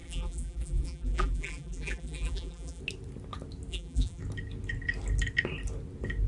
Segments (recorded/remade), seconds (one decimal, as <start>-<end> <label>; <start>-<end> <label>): 0.0-2.8 remade; 2.8-3.7 recorded; 3.7-4.2 remade; 4.2-6.3 recorded